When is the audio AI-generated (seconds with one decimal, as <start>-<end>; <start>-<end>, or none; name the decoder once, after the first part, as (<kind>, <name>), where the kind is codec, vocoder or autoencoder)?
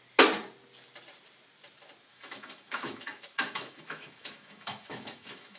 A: 2.1-5.6 (autoencoder, DAC-VAE)